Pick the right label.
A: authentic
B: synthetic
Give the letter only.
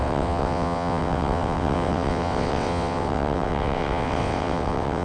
B